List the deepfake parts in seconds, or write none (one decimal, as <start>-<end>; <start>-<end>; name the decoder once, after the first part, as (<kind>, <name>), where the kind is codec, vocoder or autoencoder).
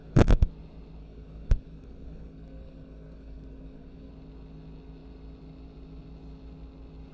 0.0-0.5 (codec, SNAC); 1.0-4.1